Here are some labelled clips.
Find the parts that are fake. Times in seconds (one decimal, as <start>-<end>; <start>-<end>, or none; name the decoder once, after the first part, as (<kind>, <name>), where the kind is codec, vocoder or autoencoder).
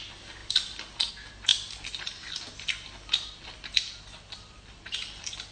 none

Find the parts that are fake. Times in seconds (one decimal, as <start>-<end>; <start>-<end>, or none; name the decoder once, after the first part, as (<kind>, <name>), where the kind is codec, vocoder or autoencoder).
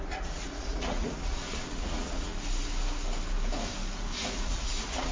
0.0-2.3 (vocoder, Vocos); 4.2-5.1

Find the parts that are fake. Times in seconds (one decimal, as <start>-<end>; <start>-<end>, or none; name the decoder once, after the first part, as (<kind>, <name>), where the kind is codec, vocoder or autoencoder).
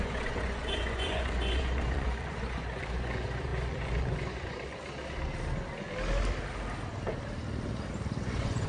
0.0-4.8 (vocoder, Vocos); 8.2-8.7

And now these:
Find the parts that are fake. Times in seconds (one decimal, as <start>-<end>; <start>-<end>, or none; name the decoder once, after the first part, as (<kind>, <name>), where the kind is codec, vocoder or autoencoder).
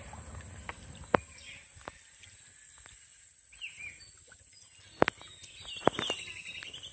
none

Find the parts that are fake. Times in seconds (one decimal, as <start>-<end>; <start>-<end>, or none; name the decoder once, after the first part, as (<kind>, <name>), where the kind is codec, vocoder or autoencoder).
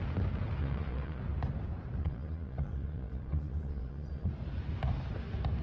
0.6-1.2 (vocoder, Vocos); 2.0-4.3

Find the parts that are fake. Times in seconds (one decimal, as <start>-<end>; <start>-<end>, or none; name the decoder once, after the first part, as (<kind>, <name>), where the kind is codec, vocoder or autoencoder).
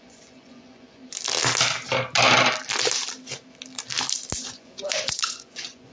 0.0-1.0 (vocoder, Vocos); 4.5-5.9